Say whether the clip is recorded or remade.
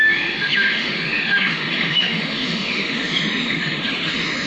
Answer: remade